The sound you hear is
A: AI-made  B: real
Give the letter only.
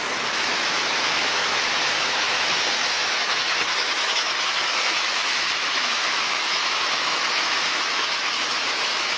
A